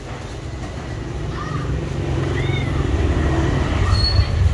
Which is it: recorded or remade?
recorded